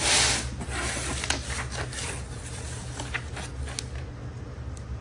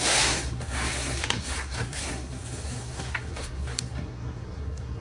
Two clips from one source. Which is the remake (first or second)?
second